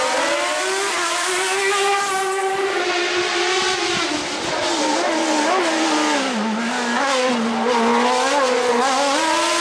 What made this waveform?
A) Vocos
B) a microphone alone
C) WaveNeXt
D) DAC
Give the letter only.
B